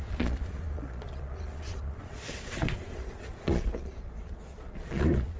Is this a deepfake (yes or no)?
yes